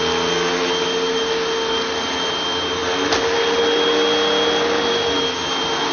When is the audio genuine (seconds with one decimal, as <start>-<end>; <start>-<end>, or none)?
0.0-5.9